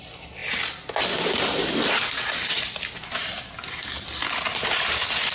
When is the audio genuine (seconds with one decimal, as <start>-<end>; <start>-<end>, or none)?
0.0-3.2; 4.1-4.5